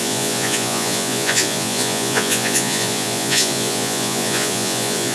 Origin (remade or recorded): remade